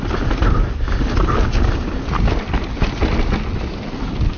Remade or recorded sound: recorded